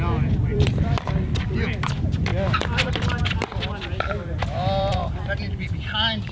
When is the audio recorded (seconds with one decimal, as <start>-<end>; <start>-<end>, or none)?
2.3-2.9

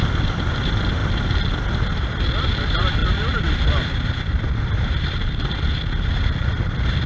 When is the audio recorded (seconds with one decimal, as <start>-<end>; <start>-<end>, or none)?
1.0-2.2

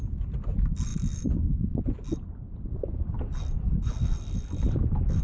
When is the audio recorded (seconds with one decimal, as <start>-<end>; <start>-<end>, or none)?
0.0-5.2